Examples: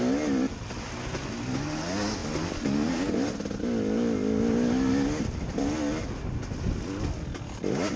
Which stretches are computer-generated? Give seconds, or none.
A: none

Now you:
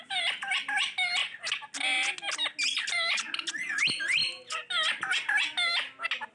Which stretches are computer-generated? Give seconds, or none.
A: none

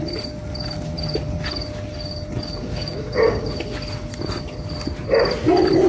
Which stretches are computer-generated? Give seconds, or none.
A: 2.6-3.4 (codec, DAC)

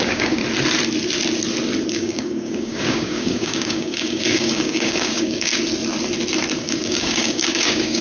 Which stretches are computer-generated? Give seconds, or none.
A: 0.0-0.4 (codec, DAC); 1.9-5.5; 6.6-8.0

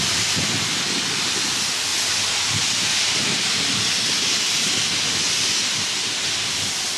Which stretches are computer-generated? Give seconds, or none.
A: none

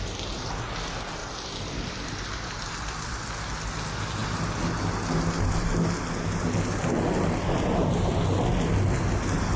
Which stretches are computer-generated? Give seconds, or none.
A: none

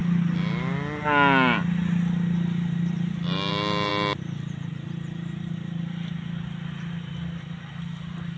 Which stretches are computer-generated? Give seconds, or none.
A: none